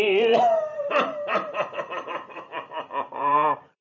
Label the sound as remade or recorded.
remade